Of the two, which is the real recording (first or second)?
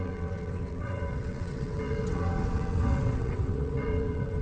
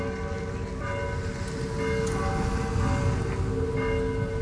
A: second